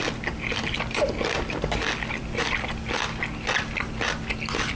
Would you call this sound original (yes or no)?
yes